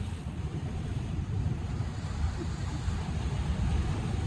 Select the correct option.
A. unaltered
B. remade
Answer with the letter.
B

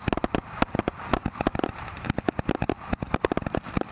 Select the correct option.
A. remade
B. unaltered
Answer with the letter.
B